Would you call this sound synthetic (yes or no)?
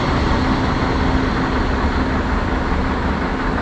no